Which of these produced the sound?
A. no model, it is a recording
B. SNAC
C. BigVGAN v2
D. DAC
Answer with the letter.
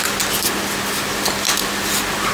A